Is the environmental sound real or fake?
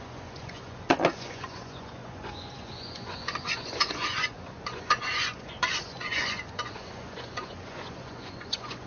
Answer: fake